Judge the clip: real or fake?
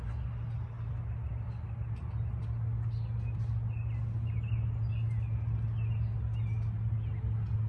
real